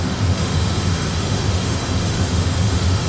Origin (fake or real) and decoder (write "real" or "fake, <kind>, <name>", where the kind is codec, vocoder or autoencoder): fake, autoencoder, DAC-VAE